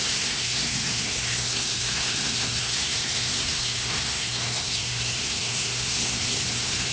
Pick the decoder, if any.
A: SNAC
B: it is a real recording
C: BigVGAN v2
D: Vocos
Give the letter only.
A